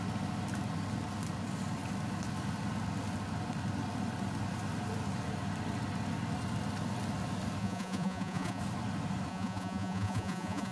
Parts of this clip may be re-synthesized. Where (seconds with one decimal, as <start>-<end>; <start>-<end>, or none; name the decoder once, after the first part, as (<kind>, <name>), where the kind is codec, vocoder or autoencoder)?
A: 7.6-8.6 (vocoder, Vocos); 9.3-10.7